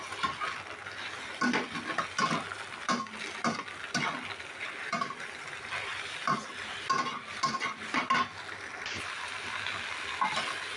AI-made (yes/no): no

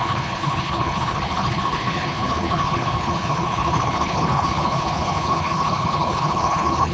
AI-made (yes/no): yes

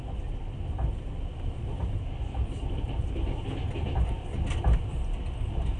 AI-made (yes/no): no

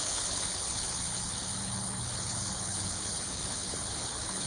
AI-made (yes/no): yes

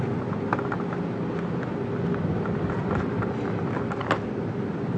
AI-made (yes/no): no